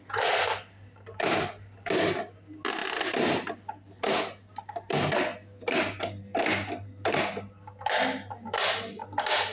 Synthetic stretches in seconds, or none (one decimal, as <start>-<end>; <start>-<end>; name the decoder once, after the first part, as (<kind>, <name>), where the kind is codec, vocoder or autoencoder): none